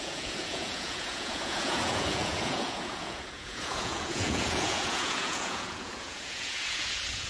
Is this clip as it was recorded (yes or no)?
no